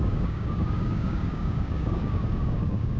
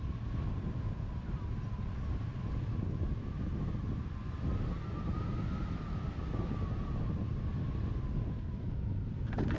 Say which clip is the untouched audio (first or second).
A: second